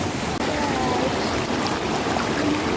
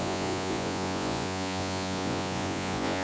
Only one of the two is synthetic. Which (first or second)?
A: second